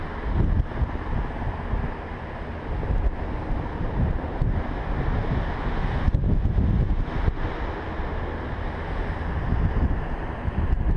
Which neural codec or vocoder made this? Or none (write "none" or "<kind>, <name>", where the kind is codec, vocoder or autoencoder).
none